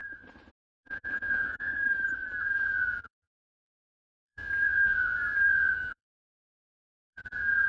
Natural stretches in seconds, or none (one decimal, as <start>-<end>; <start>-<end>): 0.0-0.5; 1.7-2.4